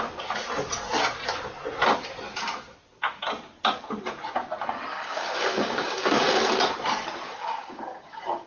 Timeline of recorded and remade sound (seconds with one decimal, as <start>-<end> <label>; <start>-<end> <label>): 0.0-4.9 recorded; 4.9-6.4 remade; 6.4-7.4 recorded; 7.4-8.5 remade